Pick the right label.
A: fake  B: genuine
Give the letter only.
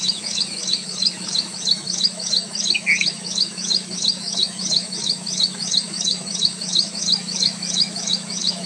A